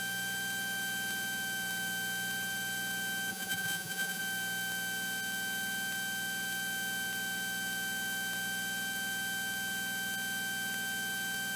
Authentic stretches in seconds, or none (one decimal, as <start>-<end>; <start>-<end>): 0.0-3.3; 4.2-11.6